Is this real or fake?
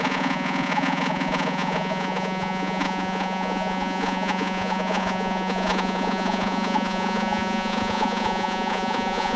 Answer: fake